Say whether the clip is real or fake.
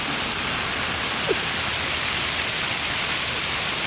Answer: real